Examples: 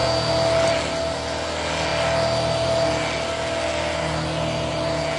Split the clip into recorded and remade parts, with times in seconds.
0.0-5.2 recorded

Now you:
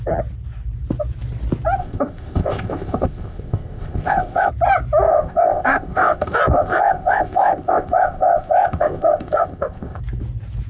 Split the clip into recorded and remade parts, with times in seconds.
0.0-1.8 recorded; 1.8-4.5 remade; 4.5-5.1 recorded; 5.1-10.0 remade; 10.0-10.7 recorded

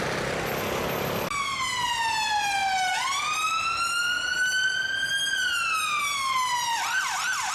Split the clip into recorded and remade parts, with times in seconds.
0.0-7.5 recorded

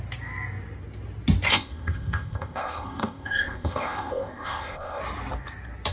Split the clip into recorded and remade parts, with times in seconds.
0.0-1.5 recorded; 1.5-5.0 remade; 5.0-5.9 recorded

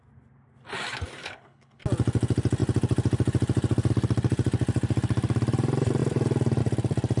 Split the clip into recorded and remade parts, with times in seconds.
0.0-1.2 recorded; 1.2-1.8 remade; 1.8-7.2 recorded

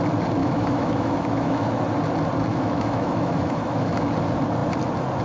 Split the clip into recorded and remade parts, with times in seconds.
0.0-0.4 recorded; 0.4-1.8 remade; 1.8-2.5 recorded; 2.5-4.1 remade; 4.1-5.2 recorded